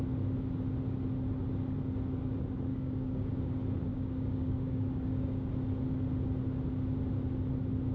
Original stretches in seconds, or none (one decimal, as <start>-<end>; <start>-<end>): 0.0-2.7; 3.5-3.9; 5.5-7.9